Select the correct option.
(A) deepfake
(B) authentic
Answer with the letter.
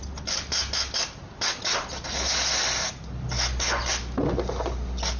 B